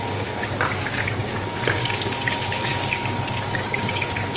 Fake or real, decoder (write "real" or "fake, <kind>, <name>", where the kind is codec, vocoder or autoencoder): fake, codec, DAC